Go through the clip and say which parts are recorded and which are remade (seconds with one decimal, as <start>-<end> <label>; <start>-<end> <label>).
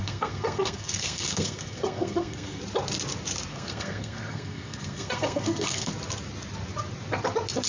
0.0-2.6 remade; 2.6-3.5 recorded; 3.5-5.9 remade; 5.9-7.7 recorded